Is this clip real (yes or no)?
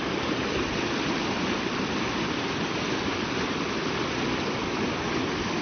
yes